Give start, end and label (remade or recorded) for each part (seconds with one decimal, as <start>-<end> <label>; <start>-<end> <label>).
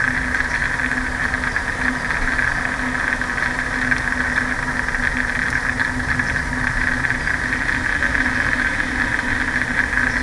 0.0-10.2 recorded